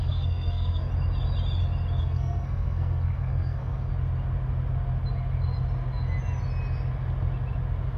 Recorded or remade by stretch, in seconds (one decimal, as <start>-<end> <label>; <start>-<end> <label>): 0.0-0.9 remade; 0.9-2.0 recorded; 2.0-3.9 remade; 3.9-8.0 recorded